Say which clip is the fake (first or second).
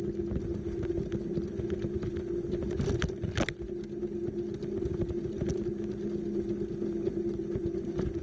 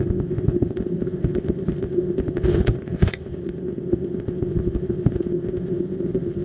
second